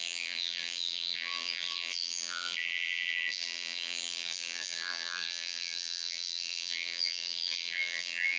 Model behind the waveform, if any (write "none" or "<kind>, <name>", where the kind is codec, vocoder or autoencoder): vocoder, BigVGAN v2